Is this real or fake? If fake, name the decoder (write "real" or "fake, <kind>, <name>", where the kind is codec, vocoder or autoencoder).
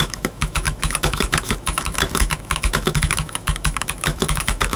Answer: fake, autoencoder, DAC-VAE